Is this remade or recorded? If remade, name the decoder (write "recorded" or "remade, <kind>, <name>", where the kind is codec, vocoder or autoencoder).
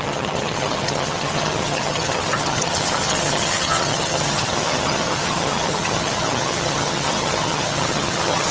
remade, vocoder, HiFi-GAN